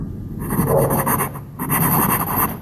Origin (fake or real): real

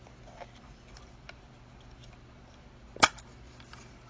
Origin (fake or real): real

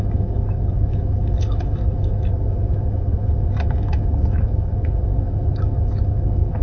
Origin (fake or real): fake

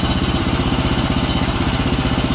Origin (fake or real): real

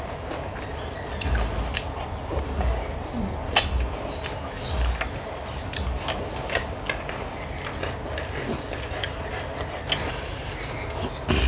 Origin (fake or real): real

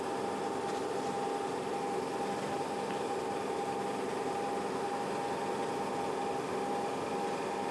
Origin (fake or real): real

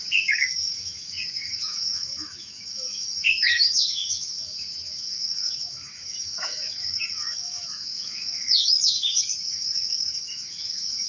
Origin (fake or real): fake